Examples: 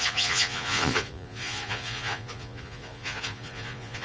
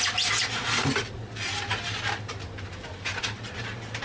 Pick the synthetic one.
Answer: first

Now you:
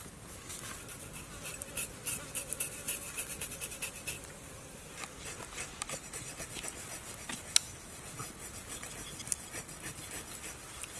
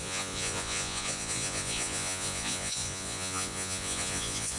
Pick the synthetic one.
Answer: second